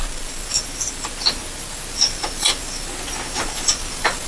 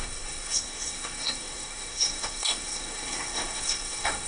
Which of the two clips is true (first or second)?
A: first